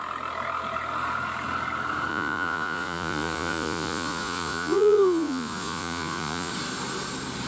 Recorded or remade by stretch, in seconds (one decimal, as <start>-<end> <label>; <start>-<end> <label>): 0.0-2.1 recorded; 2.1-6.5 remade; 6.5-7.5 recorded